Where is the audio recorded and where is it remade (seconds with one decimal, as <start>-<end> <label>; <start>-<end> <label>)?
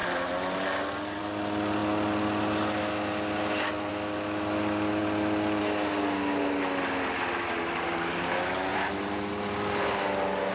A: 0.0-8.7 recorded; 8.7-9.3 remade; 9.3-10.5 recorded